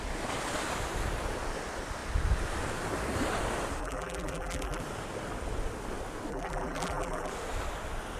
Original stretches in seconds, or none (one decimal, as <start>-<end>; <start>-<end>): 0.0-3.8; 4.8-6.3; 7.3-8.2